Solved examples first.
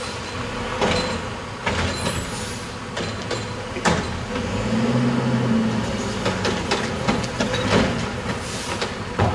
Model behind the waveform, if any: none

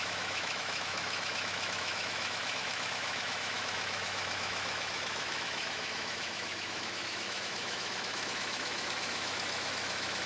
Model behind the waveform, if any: autoencoder, DAC-VAE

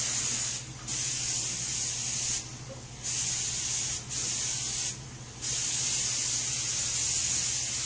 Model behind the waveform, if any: none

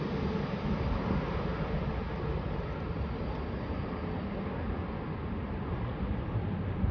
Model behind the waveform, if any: none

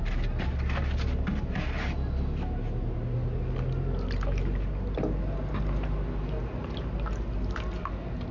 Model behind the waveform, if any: none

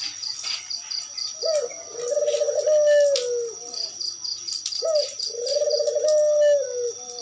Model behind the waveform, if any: none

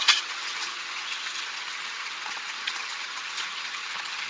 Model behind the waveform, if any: vocoder, HiFi-GAN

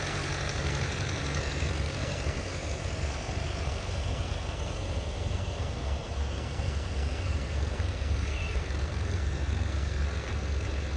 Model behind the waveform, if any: codec, SNAC